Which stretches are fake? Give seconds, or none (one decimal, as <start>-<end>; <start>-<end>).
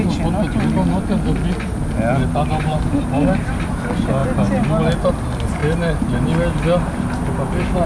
none